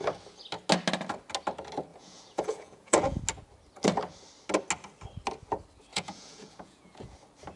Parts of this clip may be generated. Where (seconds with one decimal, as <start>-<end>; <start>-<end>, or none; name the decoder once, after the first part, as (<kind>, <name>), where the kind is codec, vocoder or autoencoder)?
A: 1.9-3.2 (vocoder, Vocos); 5.9-7.1